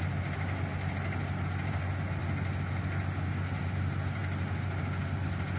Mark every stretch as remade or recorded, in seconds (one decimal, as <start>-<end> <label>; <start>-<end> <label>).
0.0-5.6 recorded